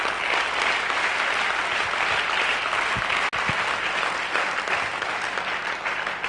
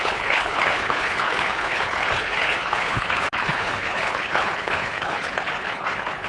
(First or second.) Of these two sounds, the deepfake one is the second